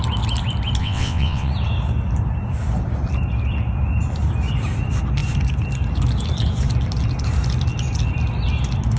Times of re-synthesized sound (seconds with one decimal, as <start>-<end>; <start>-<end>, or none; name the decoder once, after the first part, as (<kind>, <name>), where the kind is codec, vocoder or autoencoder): 0.8-1.5 (vocoder, WaveNeXt)